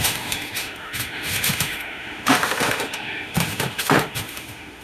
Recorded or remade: remade